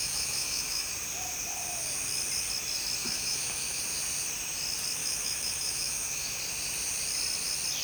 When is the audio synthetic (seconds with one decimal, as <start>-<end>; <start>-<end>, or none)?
0.0-0.9; 3.0-3.8; 5.0-6.4